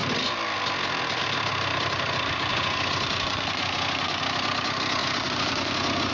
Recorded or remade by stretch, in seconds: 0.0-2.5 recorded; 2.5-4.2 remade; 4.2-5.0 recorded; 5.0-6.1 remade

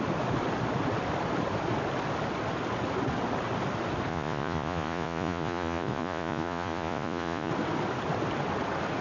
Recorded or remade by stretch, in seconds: 0.0-4.1 recorded; 4.1-7.5 remade; 7.5-9.0 recorded

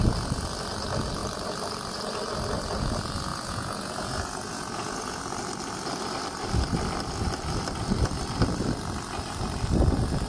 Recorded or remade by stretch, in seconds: 0.0-3.3 recorded; 3.3-5.2 remade; 5.2-10.3 recorded